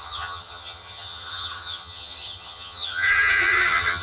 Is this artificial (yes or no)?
yes